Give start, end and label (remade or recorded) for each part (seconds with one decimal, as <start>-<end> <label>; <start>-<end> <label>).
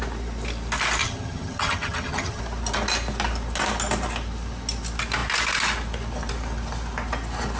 0.0-1.0 recorded; 1.0-2.4 remade; 2.4-7.6 recorded